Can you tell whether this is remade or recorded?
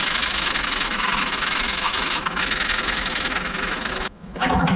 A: remade